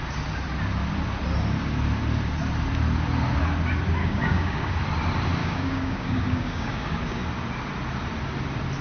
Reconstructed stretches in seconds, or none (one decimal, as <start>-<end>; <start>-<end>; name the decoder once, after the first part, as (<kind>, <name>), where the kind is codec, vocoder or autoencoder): 4.0-4.7 (codec, DAC); 5.4-7.2